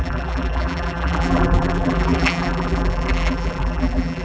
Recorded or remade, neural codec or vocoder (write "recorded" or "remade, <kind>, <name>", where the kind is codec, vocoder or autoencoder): remade, vocoder, BigVGAN v2